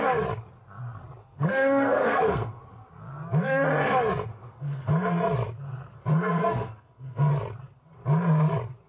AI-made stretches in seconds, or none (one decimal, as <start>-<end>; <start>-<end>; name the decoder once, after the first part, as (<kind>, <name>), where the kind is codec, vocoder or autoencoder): 1.2-2.6 (codec, SNAC); 4.3-4.9; 6.1-7.3